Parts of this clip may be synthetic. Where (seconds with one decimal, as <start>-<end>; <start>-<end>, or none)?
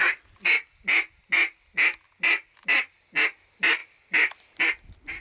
3.8-4.6